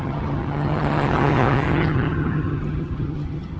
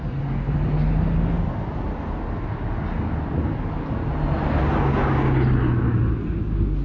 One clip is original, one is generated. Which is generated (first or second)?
first